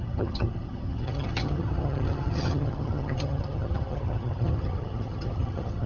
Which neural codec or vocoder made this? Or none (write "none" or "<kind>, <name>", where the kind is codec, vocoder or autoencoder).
vocoder, HiFi-GAN